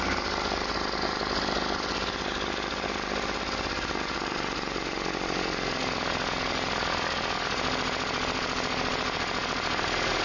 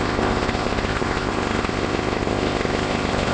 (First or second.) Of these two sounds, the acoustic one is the first